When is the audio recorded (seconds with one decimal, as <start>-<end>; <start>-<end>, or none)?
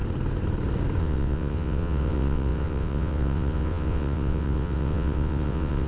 0.0-1.0